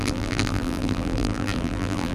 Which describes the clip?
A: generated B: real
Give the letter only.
A